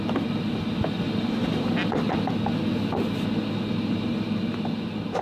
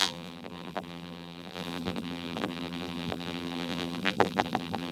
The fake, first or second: second